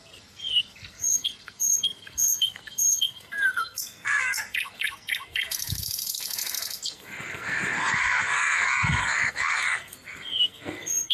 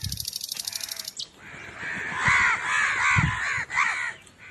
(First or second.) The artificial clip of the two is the first